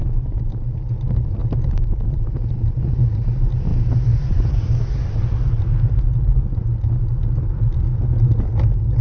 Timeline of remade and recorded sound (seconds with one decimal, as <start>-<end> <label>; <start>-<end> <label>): 0.0-1.4 recorded; 1.4-3.0 remade; 3.0-3.7 recorded; 3.7-5.2 remade; 5.2-9.0 recorded